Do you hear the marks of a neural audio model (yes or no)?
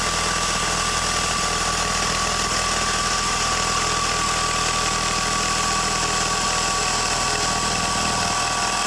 no